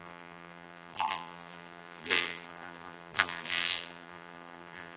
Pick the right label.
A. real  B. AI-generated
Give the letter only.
B